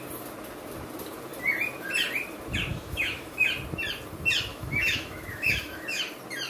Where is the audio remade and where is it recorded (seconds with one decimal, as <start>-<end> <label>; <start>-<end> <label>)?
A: 0.0-2.7 recorded; 2.7-3.5 remade; 3.5-4.5 recorded; 4.5-6.0 remade; 6.0-6.5 recorded